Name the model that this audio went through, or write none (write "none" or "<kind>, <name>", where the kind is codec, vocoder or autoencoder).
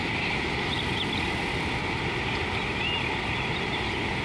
none